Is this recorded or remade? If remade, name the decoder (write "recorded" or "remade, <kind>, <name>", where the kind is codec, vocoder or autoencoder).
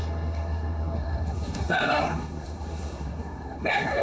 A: remade, codec, SNAC